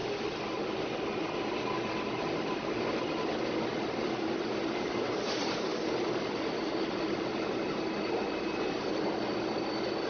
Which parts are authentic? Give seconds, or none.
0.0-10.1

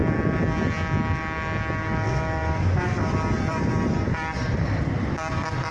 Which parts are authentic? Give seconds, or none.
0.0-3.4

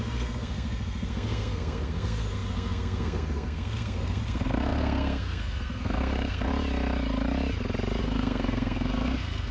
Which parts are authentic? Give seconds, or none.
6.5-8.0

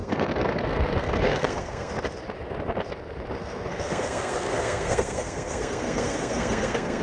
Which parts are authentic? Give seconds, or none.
1.9-3.4

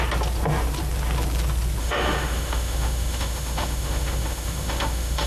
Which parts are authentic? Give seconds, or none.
0.0-1.8